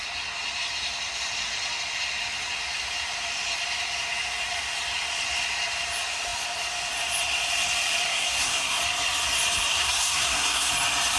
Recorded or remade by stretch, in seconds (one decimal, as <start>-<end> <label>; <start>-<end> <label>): 0.0-8.1 recorded; 8.1-8.8 remade; 8.8-9.7 recorded; 9.7-10.7 remade; 10.7-11.2 recorded